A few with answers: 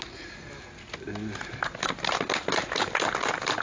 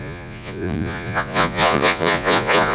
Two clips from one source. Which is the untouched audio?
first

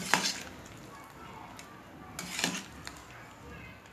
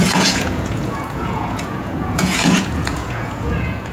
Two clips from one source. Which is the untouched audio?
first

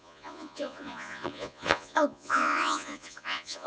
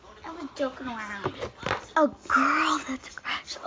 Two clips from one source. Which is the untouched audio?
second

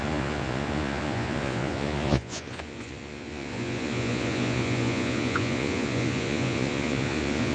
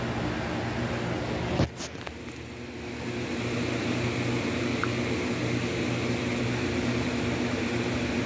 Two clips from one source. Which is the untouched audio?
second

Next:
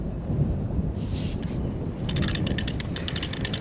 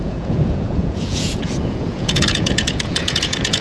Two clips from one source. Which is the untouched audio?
first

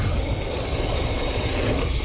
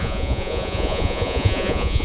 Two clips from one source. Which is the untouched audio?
first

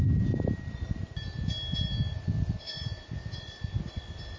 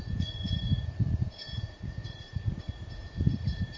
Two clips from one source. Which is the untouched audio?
first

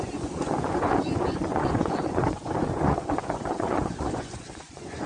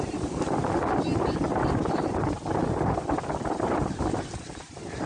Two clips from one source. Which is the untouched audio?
second